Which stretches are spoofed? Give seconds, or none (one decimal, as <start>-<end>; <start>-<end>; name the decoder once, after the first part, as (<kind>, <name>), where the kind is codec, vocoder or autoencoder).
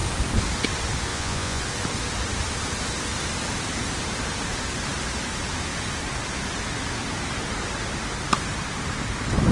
1.1-1.6 (vocoder, Vocos)